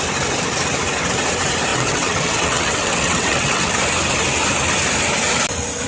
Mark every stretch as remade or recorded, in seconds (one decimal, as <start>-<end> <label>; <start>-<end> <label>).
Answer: 0.0-1.7 recorded; 1.7-3.7 remade; 3.7-5.9 recorded

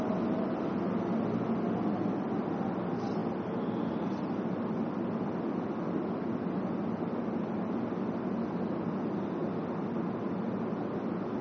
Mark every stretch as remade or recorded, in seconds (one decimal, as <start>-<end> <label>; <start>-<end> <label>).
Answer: 0.0-11.4 recorded

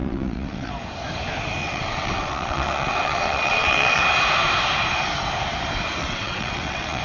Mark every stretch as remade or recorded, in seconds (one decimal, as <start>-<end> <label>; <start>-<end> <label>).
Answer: 0.0-0.7 remade; 0.7-1.6 recorded; 1.6-4.0 remade; 4.0-6.0 recorded; 6.0-7.0 remade

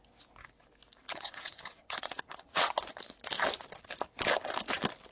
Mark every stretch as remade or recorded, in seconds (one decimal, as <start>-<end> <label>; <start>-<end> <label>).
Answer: 0.0-1.1 recorded; 1.1-2.7 remade; 2.7-5.1 recorded

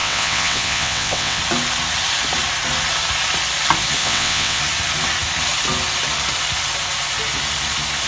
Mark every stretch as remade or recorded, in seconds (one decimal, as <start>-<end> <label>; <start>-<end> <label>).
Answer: 0.0-1.4 remade; 1.4-4.0 recorded; 4.0-4.6 remade; 4.6-8.1 recorded

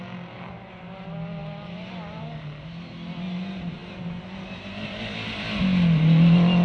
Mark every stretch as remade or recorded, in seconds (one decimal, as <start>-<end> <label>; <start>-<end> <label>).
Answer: 0.0-6.6 recorded

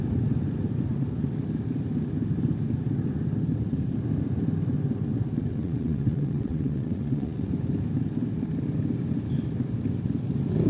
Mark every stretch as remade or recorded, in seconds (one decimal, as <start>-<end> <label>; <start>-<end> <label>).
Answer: 0.0-5.5 recorded; 5.5-7.5 remade; 7.5-10.7 recorded

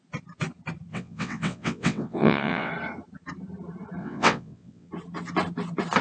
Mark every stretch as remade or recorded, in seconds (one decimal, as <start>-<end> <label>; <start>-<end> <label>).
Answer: 0.0-0.9 recorded; 0.9-2.7 remade; 2.7-4.0 recorded; 4.0-4.9 remade; 4.9-6.0 recorded